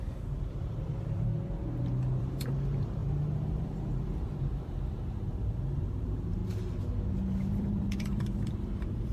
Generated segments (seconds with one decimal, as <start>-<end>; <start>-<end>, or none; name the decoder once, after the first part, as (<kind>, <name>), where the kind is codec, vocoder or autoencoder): 0.0-1.3 (vocoder, BigVGAN v2); 2.2-6.4; 7.5-9.1